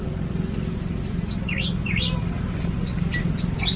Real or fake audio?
real